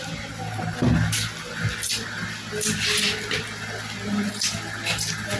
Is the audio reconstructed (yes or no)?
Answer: no